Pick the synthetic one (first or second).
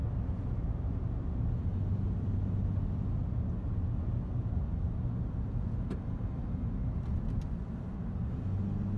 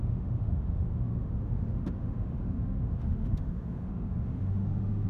second